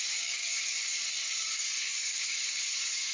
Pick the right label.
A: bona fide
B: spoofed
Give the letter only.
B